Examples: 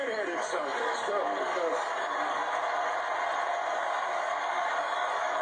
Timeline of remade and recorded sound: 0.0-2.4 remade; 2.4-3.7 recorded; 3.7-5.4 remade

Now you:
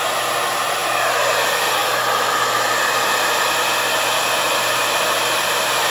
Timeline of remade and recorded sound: 0.0-5.9 recorded

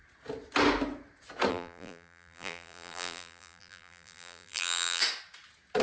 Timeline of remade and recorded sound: 0.0-1.5 recorded; 1.5-5.0 remade; 5.0-5.8 recorded

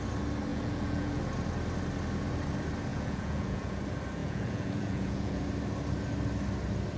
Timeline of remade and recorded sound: 0.0-0.5 recorded; 0.5-1.2 remade; 1.2-2.9 recorded; 2.9-3.7 remade; 3.7-4.2 recorded; 4.2-5.4 remade; 5.4-7.0 recorded

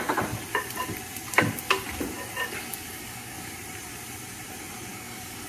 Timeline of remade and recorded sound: 0.0-2.7 recorded; 2.7-3.5 remade; 3.5-4.9 recorded; 4.9-5.5 remade

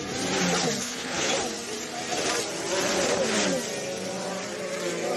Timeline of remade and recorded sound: 0.0-0.8 recorded; 0.8-1.3 remade; 1.3-5.2 recorded

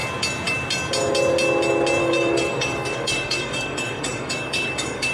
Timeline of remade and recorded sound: 0.0-2.0 recorded; 2.0-5.1 remade